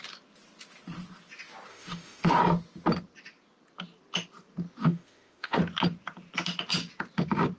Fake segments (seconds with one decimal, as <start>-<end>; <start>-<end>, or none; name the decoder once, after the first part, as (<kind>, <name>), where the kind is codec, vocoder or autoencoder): 1.7-2.4 (autoencoder, DAC-VAE); 4.8-5.6